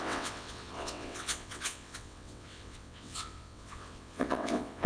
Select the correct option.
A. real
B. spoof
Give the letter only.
B